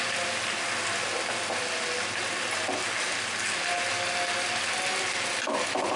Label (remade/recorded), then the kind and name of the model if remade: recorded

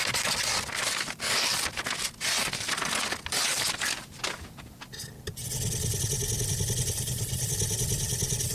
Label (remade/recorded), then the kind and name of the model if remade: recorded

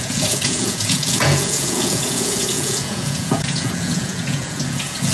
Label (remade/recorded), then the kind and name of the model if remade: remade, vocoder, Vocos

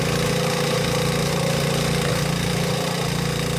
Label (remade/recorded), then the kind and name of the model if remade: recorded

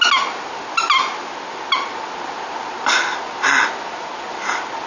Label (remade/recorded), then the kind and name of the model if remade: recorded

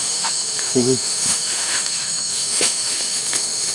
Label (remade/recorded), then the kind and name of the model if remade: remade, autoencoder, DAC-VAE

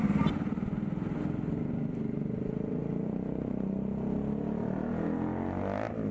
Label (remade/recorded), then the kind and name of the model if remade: recorded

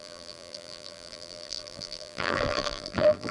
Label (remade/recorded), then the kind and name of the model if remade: remade, vocoder, BigVGAN v2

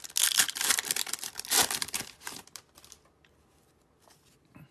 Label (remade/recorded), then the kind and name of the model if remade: recorded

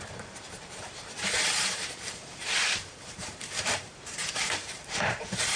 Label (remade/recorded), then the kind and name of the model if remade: remade, vocoder, BigVGAN v2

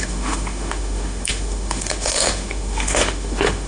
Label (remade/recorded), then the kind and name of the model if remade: remade, autoencoder, DAC-VAE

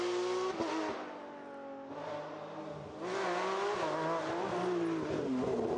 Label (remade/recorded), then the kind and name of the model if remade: recorded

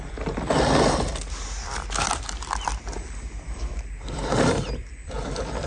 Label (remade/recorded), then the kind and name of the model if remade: remade, vocoder, BigVGAN v2